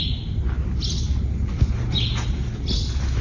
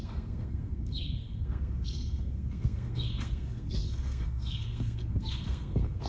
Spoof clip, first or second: second